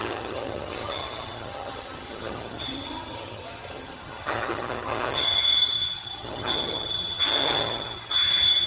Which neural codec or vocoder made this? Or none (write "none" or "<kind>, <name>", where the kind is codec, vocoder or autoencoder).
vocoder, HiFi-GAN